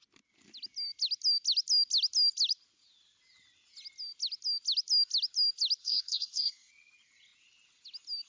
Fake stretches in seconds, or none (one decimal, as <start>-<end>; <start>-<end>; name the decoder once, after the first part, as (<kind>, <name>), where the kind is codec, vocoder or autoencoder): 5.8-6.7 (codec, SNAC)